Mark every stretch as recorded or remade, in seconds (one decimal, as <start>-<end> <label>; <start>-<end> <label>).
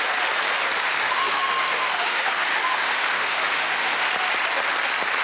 0.0-1.0 recorded; 1.0-4.1 remade; 4.1-5.2 recorded